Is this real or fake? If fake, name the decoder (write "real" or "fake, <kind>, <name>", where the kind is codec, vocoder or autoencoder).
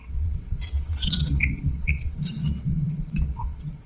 fake, vocoder, WaveNeXt